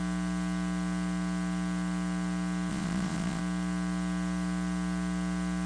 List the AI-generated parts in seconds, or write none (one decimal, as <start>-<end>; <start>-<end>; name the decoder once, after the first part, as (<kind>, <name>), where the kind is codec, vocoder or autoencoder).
2.7-3.4 (vocoder, Vocos)